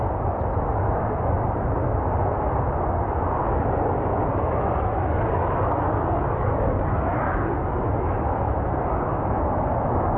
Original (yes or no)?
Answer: yes